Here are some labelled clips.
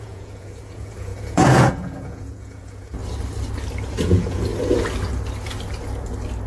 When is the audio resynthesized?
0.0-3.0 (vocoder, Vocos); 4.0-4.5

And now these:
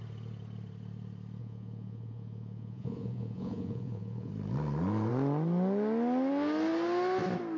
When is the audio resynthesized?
1.4-4.3 (vocoder, Vocos)